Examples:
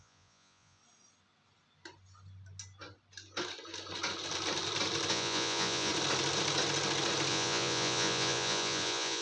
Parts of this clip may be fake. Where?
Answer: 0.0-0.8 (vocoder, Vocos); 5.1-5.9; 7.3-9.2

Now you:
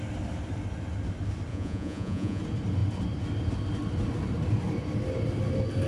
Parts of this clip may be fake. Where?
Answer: 1.5-2.4 (vocoder, Vocos)